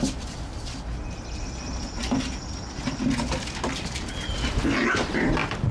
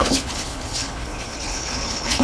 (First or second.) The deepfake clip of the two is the second